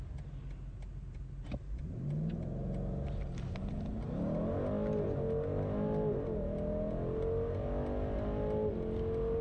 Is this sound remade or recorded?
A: recorded